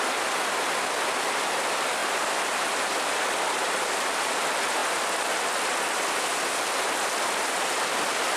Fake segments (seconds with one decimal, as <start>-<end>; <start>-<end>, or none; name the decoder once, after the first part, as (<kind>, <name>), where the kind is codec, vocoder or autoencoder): 2.0-4.3 (vocoder, BigVGAN v2)